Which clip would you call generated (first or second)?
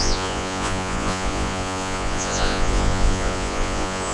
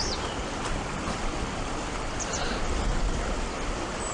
first